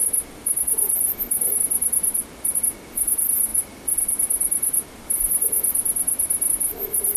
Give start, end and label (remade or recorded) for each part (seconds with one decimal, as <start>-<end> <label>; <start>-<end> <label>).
0.0-7.2 recorded